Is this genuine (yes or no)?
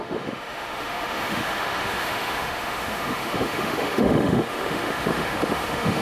no